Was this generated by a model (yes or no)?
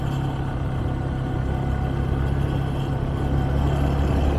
no